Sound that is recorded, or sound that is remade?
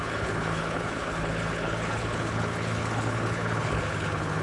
remade